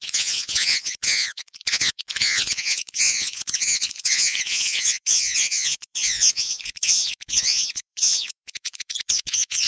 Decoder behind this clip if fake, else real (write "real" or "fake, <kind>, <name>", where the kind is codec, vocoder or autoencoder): fake, vocoder, Vocos